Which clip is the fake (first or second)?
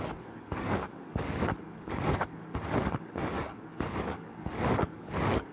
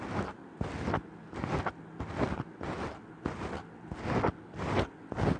first